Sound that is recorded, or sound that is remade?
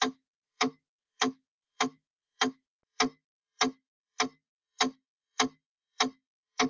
remade